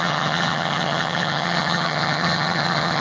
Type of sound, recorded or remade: remade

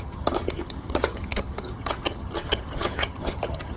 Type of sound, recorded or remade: remade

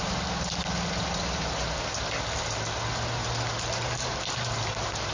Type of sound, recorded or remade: recorded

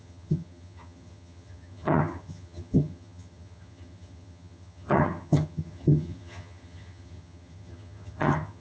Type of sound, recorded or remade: remade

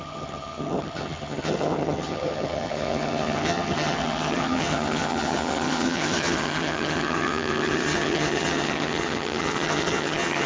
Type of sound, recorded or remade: remade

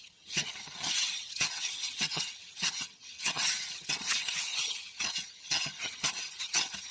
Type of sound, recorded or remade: remade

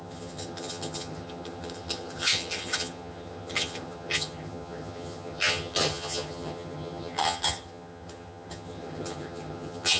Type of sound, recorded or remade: remade